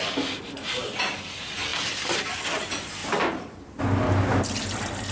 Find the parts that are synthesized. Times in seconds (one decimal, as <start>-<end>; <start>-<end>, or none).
1.7-2.4; 3.0-3.6